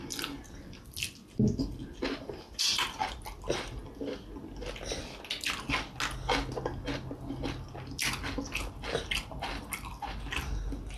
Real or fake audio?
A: real